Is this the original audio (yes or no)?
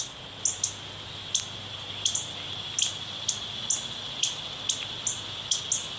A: yes